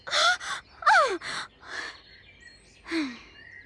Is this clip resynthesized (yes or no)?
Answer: no